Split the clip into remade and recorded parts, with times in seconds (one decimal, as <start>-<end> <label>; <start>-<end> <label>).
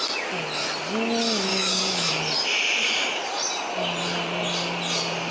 0.0-1.5 recorded; 1.5-2.1 remade; 2.1-5.3 recorded